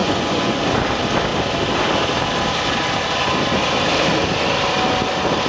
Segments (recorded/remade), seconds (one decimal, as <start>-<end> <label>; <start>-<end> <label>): 0.0-0.6 remade; 0.6-5.5 recorded